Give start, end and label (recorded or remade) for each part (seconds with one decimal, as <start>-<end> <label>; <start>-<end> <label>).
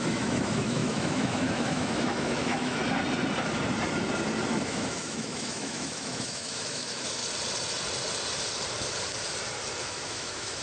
0.0-2.8 remade; 2.8-4.5 recorded; 4.5-7.2 remade; 7.2-9.8 recorded; 9.8-10.6 remade